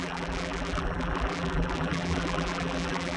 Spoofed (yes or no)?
yes